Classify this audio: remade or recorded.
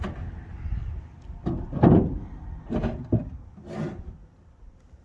recorded